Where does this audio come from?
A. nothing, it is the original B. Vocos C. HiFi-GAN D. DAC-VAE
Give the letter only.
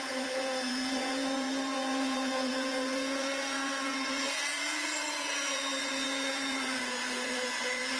B